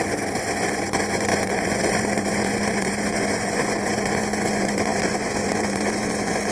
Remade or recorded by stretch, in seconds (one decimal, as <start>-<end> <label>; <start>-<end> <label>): 0.0-6.5 remade